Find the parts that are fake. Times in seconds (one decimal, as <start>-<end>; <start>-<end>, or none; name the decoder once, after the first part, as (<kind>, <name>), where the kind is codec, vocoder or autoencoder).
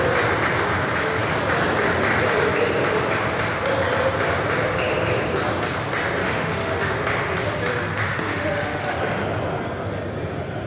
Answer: 6.2-6.9 (autoencoder, DAC-VAE); 7.9-9.0